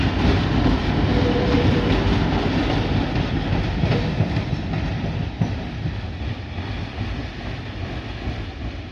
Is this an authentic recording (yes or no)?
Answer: yes